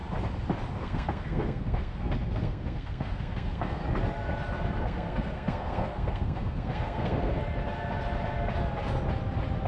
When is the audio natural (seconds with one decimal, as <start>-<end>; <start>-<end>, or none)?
0.0-0.8; 3.8-4.8; 7.4-9.7